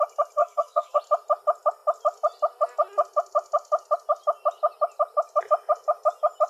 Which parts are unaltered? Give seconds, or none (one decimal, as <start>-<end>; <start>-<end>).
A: 0.0-0.4; 1.0-6.5